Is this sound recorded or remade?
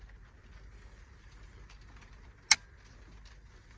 recorded